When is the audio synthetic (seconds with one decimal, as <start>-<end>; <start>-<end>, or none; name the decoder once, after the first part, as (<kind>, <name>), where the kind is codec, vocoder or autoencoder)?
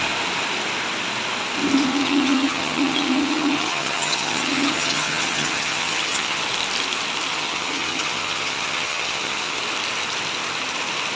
1.9-6.4 (vocoder, HiFi-GAN); 7.3-9.6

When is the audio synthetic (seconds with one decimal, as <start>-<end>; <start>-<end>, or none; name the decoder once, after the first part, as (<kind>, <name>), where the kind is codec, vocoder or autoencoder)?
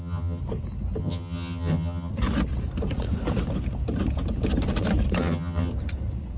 0.0-0.4 (vocoder, HiFi-GAN); 1.0-2.1; 5.2-5.7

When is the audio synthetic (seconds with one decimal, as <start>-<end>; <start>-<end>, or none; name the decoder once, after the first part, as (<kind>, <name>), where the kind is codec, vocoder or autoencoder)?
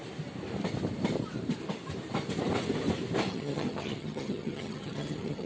3.3-5.5 (vocoder, HiFi-GAN)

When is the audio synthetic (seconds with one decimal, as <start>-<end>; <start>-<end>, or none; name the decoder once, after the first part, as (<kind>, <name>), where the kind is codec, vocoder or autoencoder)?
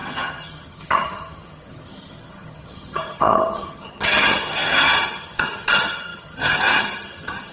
0.0-7.5 (vocoder, HiFi-GAN)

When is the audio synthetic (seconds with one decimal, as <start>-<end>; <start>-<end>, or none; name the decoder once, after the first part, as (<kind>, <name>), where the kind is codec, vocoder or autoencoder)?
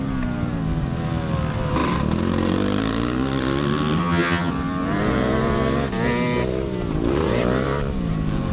4.0-4.5 (vocoder, HiFi-GAN)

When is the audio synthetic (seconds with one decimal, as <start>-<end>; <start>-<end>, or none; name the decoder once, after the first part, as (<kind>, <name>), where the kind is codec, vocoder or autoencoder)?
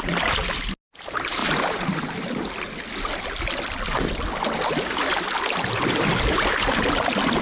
none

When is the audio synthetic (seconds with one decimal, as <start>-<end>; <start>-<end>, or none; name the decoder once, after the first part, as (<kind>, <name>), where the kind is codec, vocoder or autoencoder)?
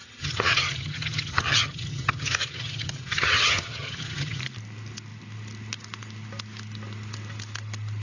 0.0-4.4 (vocoder, HiFi-GAN)